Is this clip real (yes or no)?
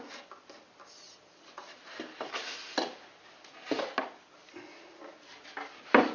yes